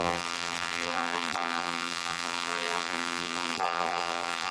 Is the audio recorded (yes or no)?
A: no